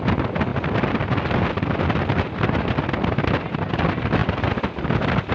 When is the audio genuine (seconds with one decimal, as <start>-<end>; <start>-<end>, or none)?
0.5-3.7

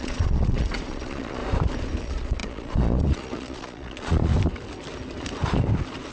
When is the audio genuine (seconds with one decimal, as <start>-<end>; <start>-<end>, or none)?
1.4-2.0; 4.3-6.1

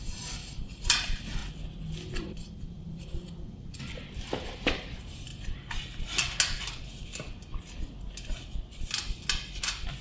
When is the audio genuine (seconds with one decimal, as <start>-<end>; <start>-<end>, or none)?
1.4-2.2; 5.3-10.0

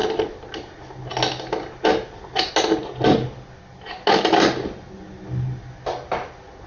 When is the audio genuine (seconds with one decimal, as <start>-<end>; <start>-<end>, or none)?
0.0-6.7

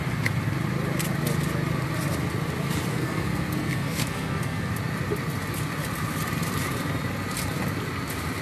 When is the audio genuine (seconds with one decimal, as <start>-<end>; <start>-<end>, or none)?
0.0-2.9; 4.7-8.4

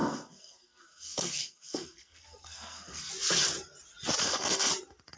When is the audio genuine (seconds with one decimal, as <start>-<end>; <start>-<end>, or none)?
3.1-4.2; 4.7-5.2

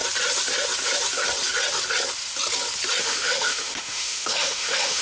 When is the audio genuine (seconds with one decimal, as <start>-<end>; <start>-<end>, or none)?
0.0-3.0